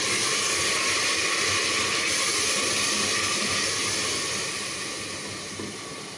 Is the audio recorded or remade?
recorded